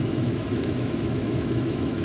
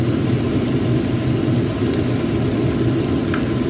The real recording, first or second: second